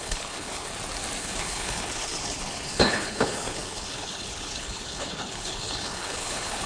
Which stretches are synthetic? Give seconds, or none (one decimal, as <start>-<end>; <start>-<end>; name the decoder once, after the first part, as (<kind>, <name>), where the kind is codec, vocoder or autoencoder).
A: 0.0-0.7 (codec, HILCodec); 1.2-6.7